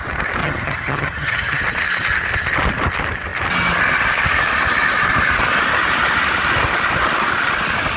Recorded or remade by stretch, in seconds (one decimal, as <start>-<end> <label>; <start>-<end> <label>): 0.0-0.4 recorded; 0.4-1.6 remade; 1.6-8.0 recorded